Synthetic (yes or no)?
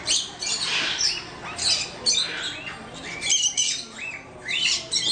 no